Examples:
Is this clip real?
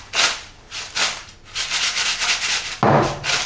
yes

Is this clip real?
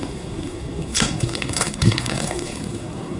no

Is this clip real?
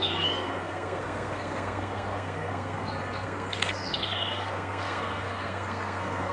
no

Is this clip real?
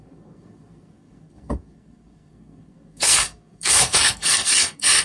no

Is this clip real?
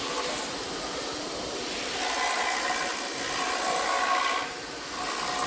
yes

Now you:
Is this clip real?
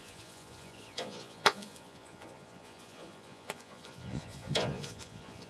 no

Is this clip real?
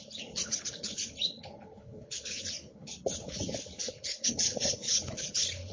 no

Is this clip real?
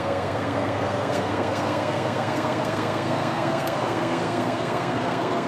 no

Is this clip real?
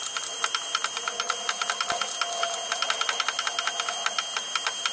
yes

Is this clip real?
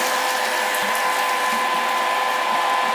yes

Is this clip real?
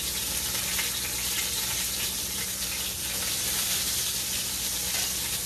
no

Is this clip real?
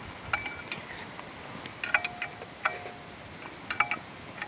yes